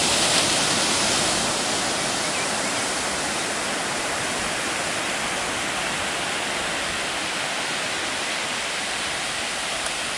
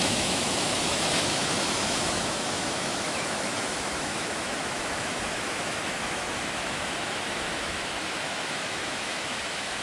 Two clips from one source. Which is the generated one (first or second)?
second